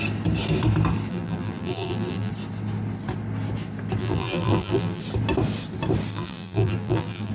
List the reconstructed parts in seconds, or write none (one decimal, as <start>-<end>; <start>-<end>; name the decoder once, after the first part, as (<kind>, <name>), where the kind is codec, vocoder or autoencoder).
1.1-2.3 (vocoder, BigVGAN v2); 4.0-5.0; 6.1-7.3